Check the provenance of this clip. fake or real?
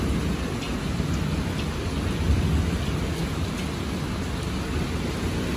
real